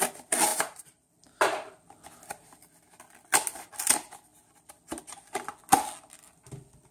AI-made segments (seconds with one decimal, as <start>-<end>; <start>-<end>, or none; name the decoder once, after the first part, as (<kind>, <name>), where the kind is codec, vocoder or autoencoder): 0.5-1.1 (vocoder, BigVGAN v2)